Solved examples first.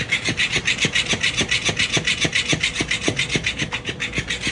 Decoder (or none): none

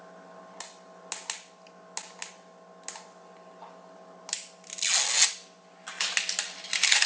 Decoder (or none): none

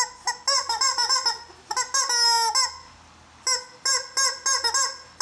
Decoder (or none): none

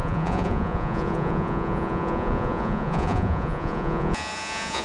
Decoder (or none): vocoder, Vocos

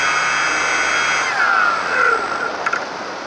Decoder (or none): none